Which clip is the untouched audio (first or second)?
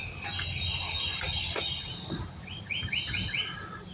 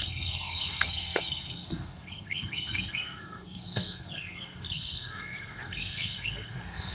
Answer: first